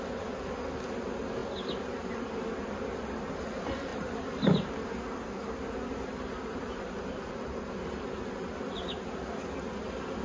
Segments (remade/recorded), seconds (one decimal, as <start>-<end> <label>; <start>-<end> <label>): 0.0-10.2 recorded